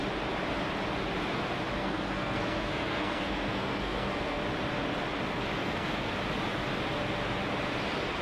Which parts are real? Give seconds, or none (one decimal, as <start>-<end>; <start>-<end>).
0.0-1.8; 4.4-5.6; 6.1-8.2